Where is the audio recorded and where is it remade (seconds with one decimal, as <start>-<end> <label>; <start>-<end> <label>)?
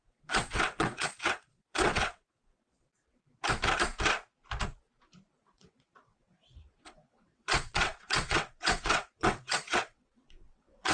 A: 0.0-2.9 remade; 2.9-5.4 recorded; 5.4-10.9 remade